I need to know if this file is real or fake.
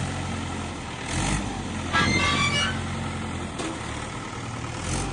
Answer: real